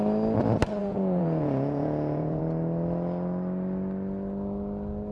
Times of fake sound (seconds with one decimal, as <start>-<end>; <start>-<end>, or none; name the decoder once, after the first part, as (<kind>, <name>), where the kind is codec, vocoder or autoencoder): 0.8-2.4 (vocoder, Vocos)